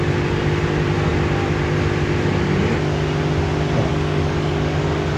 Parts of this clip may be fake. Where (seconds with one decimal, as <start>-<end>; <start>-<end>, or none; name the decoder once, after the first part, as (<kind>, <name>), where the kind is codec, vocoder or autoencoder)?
3.9-5.2 (codec, DAC)